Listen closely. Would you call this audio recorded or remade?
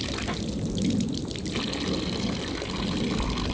recorded